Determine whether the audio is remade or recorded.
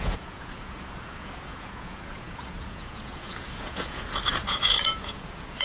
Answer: remade